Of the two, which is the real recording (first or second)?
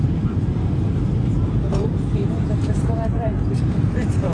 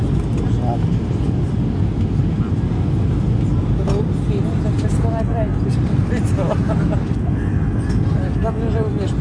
second